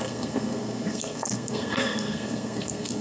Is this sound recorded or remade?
remade